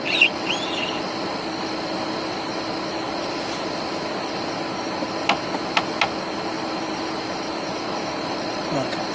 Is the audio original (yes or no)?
yes